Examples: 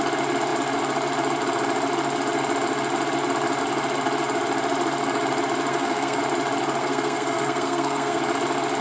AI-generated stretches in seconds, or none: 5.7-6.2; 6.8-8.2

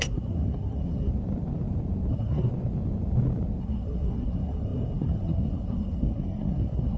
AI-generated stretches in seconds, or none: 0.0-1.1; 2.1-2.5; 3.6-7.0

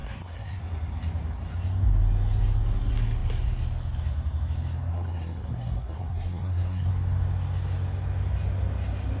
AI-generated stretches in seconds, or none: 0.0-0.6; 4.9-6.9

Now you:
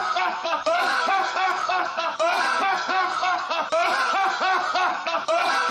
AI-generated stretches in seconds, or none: 0.0-3.4; 4.9-5.7